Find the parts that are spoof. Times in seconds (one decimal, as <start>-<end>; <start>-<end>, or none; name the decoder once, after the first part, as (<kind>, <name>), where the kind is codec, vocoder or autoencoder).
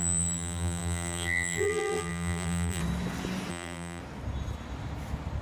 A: 0.0-2.8 (vocoder, BigVGAN v2); 3.5-4.0